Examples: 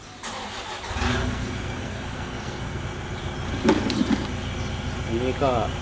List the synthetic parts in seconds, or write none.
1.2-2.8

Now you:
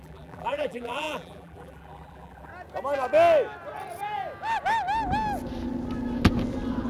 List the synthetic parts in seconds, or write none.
0.0-2.5

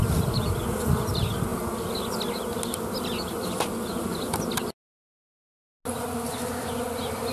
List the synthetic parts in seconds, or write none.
none

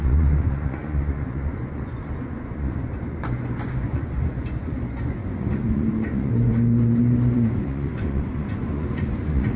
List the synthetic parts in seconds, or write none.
0.0-9.6

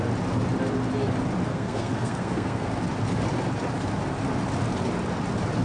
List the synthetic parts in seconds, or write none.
1.5-2.7

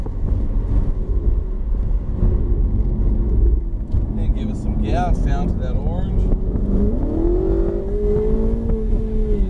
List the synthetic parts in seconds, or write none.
none

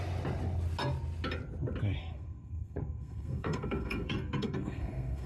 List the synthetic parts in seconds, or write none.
2.0-5.3